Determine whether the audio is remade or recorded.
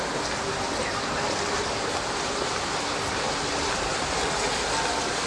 recorded